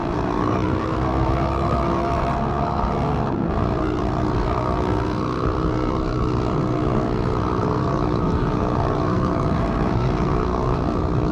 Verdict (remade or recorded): remade